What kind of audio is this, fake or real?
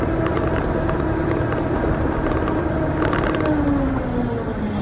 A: real